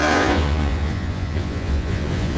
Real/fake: fake